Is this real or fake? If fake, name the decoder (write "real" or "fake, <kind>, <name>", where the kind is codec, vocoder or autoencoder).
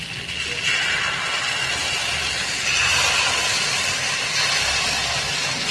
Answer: real